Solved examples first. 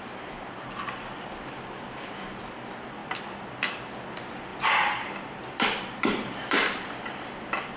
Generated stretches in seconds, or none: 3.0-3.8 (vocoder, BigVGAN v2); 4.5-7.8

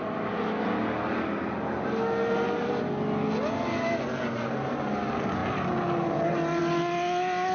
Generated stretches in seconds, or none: none